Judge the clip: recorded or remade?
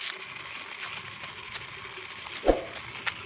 recorded